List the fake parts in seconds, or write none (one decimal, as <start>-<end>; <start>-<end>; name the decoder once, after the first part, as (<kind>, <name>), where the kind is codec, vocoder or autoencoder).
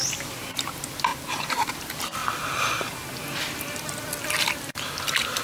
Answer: 0.0-1.1 (vocoder, BigVGAN v2); 1.7-2.2; 4.4-5.4